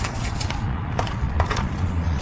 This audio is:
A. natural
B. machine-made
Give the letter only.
B